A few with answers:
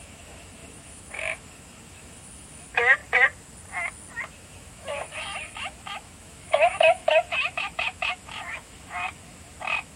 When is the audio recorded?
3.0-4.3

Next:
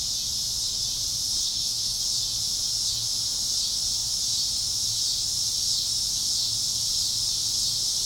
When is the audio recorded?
0.0-1.4; 2.0-8.1

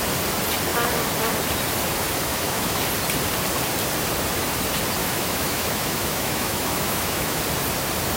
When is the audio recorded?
0.0-2.3; 2.8-5.0; 7.4-8.2

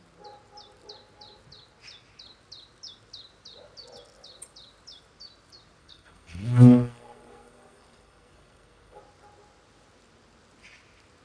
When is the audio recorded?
0.0-5.8; 9.0-11.2

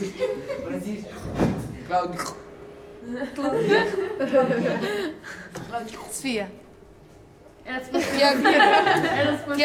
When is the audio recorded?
0.0-2.9; 4.2-9.6